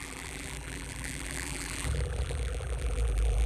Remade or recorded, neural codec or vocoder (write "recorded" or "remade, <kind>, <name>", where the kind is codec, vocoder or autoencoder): remade, vocoder, BigVGAN v2